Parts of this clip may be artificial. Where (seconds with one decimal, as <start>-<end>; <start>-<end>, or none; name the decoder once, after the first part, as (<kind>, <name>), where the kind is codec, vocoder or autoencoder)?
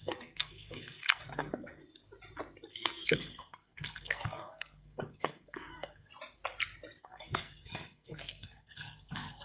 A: 0.0-1.8 (codec, SNAC); 2.7-6.1; 7.0-9.4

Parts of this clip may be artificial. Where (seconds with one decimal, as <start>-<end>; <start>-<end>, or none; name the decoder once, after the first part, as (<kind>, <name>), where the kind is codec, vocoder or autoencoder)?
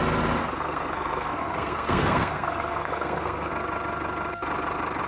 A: 0.4-3.5 (codec, SNAC)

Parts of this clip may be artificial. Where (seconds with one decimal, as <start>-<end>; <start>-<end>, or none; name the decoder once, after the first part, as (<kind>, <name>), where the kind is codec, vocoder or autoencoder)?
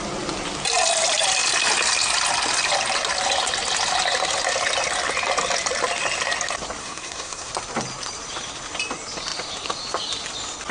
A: 6.8-7.5 (codec, SNAC)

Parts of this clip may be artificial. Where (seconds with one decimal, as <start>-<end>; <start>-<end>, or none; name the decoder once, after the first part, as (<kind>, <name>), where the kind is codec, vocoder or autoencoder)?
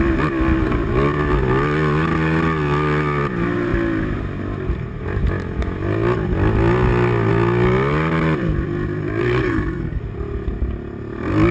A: 9.2-10.0 (codec, SNAC)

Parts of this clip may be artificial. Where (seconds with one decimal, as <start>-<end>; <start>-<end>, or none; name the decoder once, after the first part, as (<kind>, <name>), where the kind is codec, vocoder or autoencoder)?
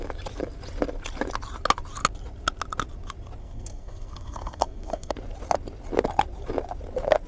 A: 3.4-5.1 (codec, SNAC)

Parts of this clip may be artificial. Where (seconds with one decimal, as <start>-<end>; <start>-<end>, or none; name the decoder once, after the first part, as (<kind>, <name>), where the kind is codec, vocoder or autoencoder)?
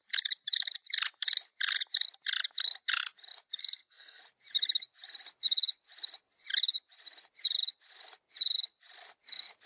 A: 3.6-4.2 (codec, SNAC)